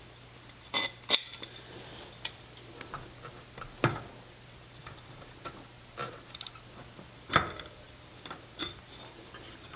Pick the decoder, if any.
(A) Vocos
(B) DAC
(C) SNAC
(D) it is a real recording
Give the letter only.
D